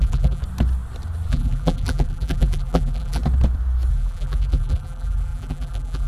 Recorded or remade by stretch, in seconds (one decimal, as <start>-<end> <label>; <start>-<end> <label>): 0.0-0.4 remade; 0.4-1.3 recorded; 1.3-3.2 remade; 3.2-3.9 recorded; 3.9-6.1 remade